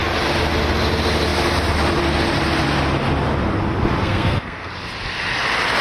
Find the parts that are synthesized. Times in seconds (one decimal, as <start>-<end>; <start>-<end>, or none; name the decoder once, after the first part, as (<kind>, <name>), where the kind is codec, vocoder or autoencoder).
4.0-4.7 (codec, SNAC)